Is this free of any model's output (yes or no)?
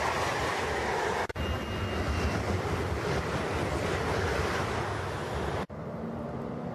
yes